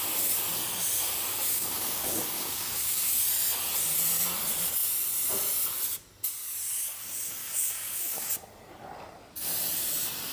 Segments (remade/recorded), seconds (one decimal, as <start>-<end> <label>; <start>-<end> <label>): 0.0-1.5 recorded; 1.5-3.2 remade; 3.2-7.4 recorded; 7.4-8.3 remade; 8.3-10.3 recorded

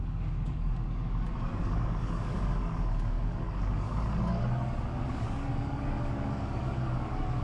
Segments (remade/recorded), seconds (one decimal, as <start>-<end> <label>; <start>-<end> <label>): 0.0-4.3 remade; 4.3-4.8 recorded; 4.8-7.4 remade

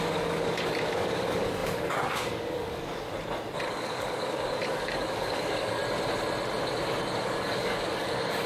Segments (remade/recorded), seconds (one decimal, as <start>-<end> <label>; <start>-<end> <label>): 0.0-3.1 remade; 3.1-3.7 recorded; 3.7-5.8 remade; 5.8-7.2 recorded; 7.2-8.5 remade

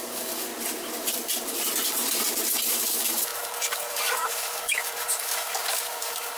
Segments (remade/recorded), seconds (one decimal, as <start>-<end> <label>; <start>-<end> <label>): 0.0-0.5 remade; 0.5-2.7 recorded; 2.7-6.4 remade

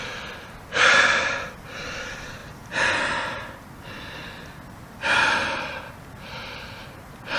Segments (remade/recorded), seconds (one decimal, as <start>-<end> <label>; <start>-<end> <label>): 0.0-7.4 recorded

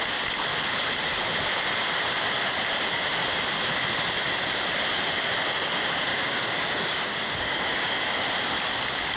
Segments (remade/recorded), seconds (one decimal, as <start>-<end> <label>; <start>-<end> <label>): 0.0-6.1 recorded; 6.1-8.2 remade; 8.2-9.2 recorded

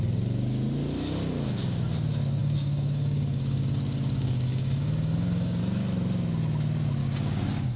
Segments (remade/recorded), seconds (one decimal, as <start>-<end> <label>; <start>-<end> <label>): 0.0-2.4 recorded; 2.4-5.6 remade; 5.6-7.0 recorded; 7.0-7.8 remade

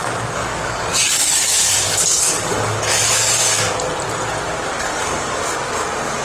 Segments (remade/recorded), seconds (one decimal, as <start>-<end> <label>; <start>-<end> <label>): 0.0-3.7 remade; 3.7-4.9 recorded; 4.9-5.4 remade; 5.4-6.2 recorded